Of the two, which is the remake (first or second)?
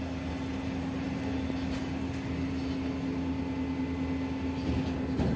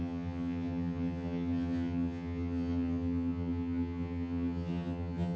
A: second